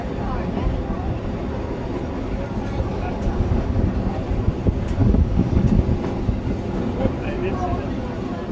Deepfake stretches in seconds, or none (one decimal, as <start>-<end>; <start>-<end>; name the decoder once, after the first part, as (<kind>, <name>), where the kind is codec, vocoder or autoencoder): 2.9-3.9 (codec, DAC); 5.0-5.8

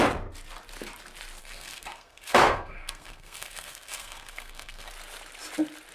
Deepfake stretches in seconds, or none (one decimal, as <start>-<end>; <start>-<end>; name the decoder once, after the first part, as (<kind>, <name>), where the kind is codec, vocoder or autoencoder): 1.4-4.9 (codec, SNAC)

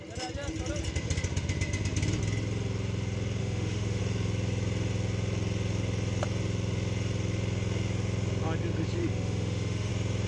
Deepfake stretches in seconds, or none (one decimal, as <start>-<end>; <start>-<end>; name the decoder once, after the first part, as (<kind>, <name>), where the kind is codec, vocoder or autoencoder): 3.4-4.0 (autoencoder, DAC-VAE); 9.0-9.9

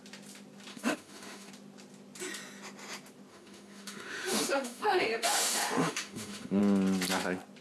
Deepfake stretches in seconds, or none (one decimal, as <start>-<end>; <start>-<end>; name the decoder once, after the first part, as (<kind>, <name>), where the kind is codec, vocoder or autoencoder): 0.7-1.5 (autoencoder, DAC-VAE); 3.3-6.6

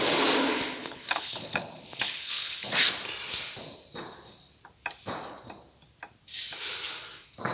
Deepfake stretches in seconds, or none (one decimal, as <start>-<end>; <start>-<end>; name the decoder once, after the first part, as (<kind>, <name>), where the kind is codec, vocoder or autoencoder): 0.8-2.8 (codec, HILCodec)

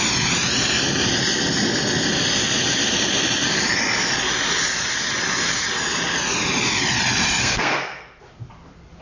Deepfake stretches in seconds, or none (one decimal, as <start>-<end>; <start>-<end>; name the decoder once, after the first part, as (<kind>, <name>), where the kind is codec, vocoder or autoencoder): 7.4-8.2 (codec, SNAC)